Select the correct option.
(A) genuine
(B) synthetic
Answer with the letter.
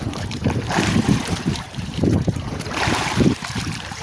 B